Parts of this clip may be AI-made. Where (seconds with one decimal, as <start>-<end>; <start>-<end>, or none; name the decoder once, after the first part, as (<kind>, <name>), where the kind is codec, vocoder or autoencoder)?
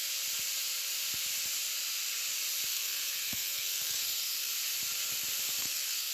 2.7-4.5 (codec, SNAC); 5.6-6.1